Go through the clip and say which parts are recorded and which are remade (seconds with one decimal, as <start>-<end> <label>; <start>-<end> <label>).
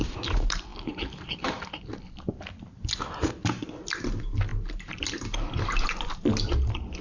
0.0-7.0 recorded